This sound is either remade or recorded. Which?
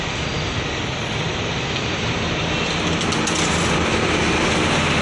recorded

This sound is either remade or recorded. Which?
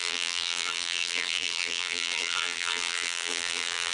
remade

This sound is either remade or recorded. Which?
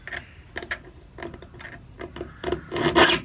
recorded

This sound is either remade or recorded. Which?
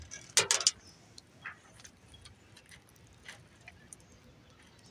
recorded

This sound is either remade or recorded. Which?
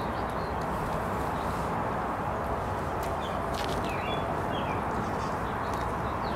recorded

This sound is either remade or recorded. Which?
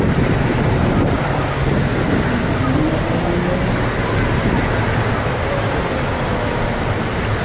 recorded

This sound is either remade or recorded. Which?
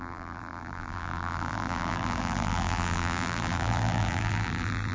remade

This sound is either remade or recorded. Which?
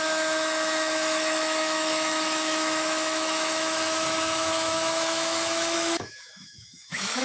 remade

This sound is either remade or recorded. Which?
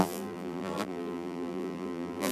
remade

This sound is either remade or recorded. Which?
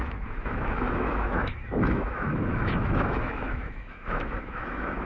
remade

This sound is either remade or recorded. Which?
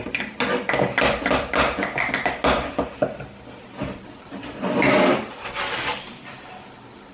recorded